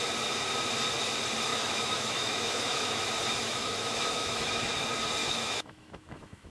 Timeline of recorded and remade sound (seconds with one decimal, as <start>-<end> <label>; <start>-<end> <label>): 0.0-1.5 recorded; 1.5-3.0 remade; 3.0-3.4 recorded; 3.4-4.7 remade; 4.7-5.2 recorded; 5.2-6.5 remade